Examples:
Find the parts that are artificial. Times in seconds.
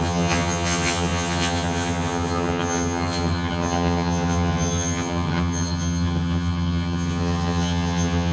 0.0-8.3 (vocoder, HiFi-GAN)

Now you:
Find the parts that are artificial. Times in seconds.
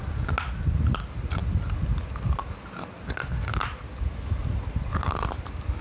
none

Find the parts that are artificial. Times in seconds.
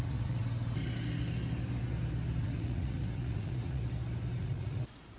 0.0-0.4 (vocoder, Vocos); 2.4-3.8; 4.4-5.2